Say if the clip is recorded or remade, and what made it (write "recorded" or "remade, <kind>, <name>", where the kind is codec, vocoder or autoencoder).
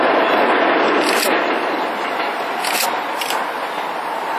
recorded